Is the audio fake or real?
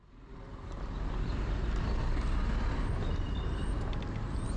real